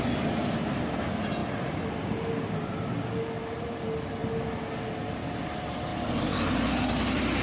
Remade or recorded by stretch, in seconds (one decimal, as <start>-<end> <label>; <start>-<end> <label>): 0.0-7.4 recorded